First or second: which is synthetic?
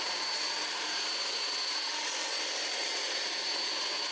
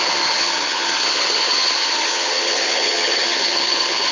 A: second